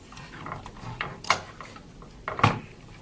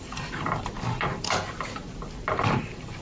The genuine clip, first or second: first